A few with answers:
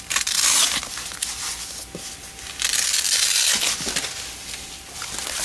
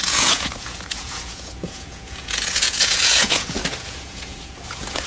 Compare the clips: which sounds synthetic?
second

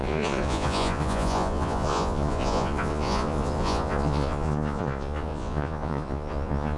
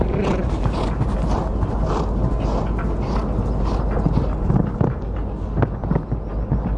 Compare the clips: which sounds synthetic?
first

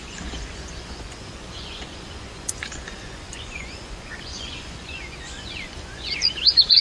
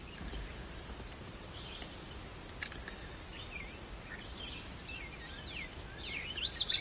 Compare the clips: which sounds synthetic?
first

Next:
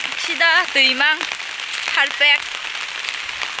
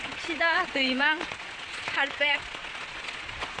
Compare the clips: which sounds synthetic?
second